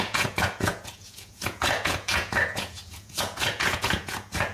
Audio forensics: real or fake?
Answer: fake